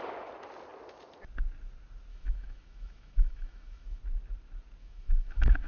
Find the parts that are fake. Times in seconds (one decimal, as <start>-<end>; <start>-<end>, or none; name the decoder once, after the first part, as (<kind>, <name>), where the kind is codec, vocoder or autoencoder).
2.1-4.0 (autoencoder, DAC-VAE); 4.8-5.7